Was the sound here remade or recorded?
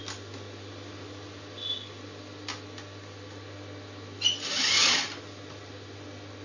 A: recorded